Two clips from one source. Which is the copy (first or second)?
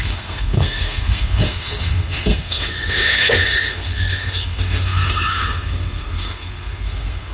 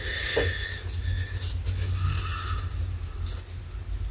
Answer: first